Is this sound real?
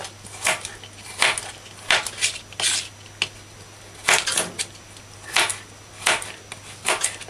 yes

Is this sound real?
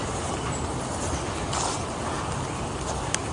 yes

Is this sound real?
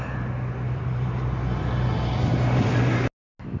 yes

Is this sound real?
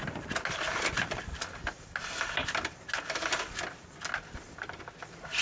yes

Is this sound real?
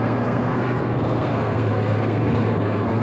no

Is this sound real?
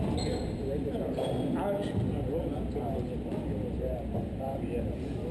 yes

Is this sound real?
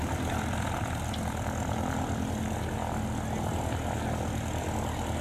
yes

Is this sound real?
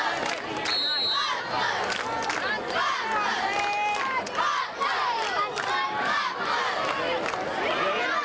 yes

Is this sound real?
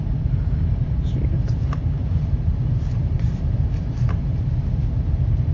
no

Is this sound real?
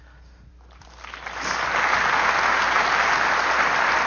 yes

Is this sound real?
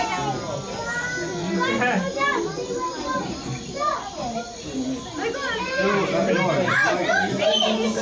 yes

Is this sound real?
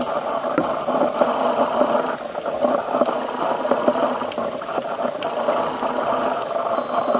yes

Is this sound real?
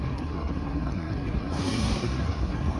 no